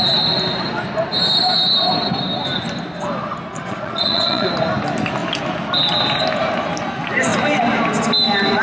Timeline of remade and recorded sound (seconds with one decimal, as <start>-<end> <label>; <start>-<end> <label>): 0.0-3.5 recorded; 3.5-4.5 remade; 4.5-8.6 recorded